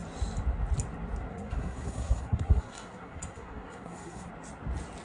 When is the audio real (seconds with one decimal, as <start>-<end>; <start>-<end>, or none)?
0.0-1.3; 4.3-5.0